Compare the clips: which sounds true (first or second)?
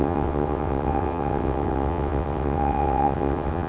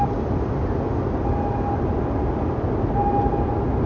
second